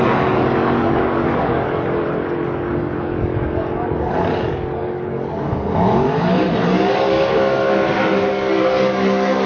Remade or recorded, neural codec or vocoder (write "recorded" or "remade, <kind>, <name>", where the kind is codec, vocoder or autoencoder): remade, codec, DAC